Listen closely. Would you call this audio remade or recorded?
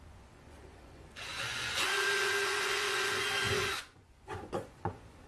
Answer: remade